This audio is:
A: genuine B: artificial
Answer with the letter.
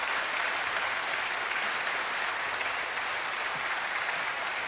A